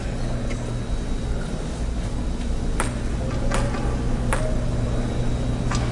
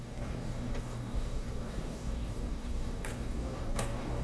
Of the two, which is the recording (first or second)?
first